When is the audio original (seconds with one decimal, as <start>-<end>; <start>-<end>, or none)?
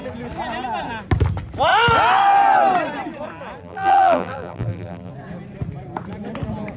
0.0-3.6; 5.1-6.8